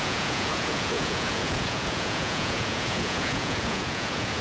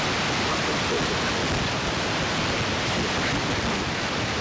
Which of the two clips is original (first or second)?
second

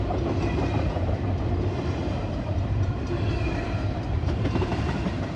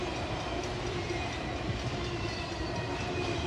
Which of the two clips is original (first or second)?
second